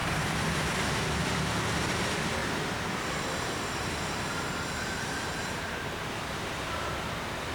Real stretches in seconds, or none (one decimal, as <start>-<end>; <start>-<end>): 0.7-2.4; 6.0-7.5

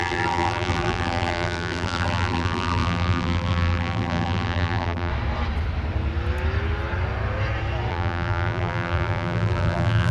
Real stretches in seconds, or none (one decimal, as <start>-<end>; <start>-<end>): 5.1-7.9

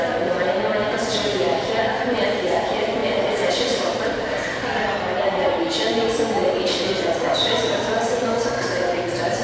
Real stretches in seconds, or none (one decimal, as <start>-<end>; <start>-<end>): none

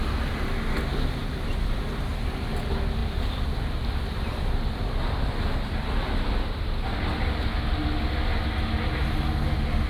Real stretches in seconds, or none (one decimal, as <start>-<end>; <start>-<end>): 0.0-1.2; 2.1-9.9

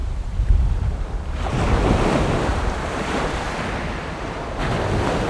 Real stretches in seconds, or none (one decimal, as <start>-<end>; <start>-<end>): 1.6-2.5; 3.5-5.3

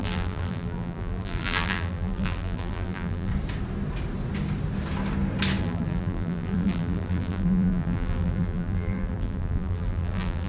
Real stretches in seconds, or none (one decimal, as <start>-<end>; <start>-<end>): 3.3-5.6

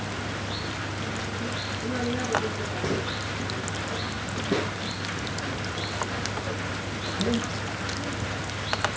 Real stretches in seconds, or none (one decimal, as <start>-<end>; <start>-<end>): 0.0-9.0